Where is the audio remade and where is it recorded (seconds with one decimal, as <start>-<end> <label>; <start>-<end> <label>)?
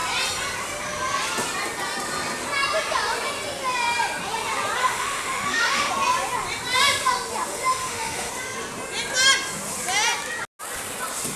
0.0-4.8 recorded; 4.8-5.9 remade; 5.9-7.5 recorded; 7.5-8.3 remade; 8.3-11.4 recorded